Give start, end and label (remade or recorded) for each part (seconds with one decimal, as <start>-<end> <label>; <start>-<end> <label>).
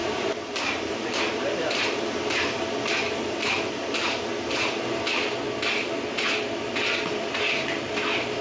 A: 0.0-1.8 remade; 1.8-8.4 recorded